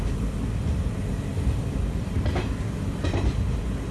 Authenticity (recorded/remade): recorded